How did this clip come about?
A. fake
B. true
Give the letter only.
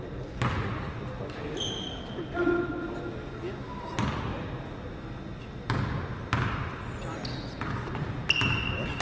B